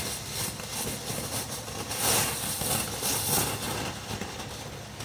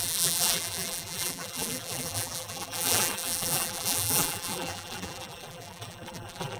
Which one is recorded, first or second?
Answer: first